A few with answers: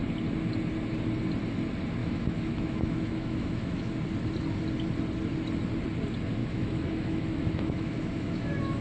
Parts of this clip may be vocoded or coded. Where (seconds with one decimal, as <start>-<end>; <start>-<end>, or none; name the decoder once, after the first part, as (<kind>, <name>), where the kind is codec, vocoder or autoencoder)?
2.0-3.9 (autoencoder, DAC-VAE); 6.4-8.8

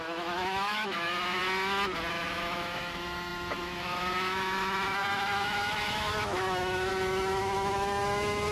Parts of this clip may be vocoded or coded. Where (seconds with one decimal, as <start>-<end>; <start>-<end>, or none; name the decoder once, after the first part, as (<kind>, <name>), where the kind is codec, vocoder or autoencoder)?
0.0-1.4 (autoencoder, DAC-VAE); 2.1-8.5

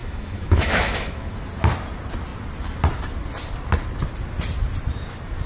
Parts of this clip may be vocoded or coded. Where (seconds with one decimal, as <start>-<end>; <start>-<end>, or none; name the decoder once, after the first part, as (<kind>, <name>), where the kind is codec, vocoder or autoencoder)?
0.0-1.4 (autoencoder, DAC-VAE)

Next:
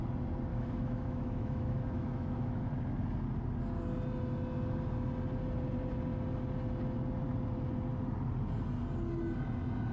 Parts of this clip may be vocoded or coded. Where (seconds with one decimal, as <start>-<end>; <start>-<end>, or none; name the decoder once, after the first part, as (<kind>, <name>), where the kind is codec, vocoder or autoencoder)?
0.5-2.7 (autoencoder, DAC-VAE)